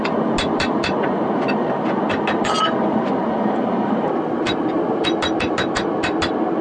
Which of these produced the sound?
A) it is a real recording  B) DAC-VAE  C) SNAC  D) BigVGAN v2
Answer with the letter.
D